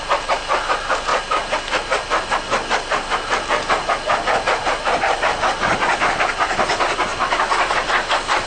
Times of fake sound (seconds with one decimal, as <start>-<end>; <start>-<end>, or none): none